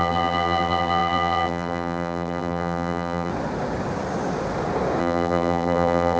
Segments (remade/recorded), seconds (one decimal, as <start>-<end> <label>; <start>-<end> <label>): 0.0-3.3 remade; 3.3-5.0 recorded; 5.0-6.2 remade